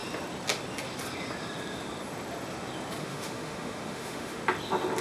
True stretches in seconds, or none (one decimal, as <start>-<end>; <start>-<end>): 0.0-3.0; 4.4-5.0